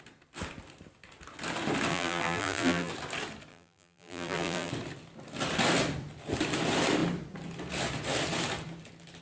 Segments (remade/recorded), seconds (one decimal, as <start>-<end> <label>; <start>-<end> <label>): 0.0-1.9 recorded; 1.9-2.9 remade; 2.9-3.5 recorded; 3.5-4.7 remade; 4.7-9.2 recorded